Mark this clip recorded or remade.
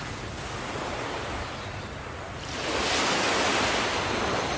recorded